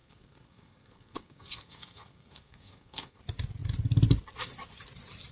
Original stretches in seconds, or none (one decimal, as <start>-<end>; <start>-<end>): 3.2-5.3